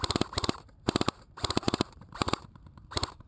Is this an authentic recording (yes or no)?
no